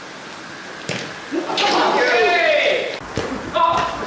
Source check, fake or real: real